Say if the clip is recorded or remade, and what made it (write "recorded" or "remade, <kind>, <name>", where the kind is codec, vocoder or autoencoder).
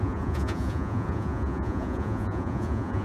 remade, vocoder, Vocos